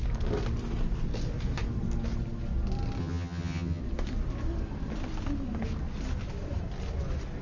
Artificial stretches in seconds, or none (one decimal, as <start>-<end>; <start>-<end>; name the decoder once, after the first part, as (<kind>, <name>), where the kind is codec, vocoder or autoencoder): 3.0-3.8 (vocoder, HiFi-GAN)